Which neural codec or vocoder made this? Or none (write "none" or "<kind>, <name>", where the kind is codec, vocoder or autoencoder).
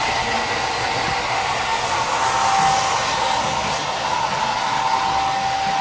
none